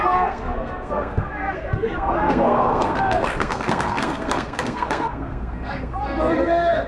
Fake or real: fake